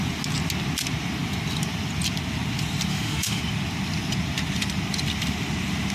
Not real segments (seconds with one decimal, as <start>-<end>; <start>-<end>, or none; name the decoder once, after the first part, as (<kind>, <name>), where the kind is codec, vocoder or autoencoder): 2.9-3.4 (autoencoder, DAC-VAE)